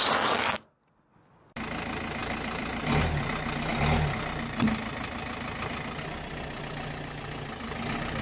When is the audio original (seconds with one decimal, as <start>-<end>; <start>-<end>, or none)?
0.0-2.2; 3.0-8.2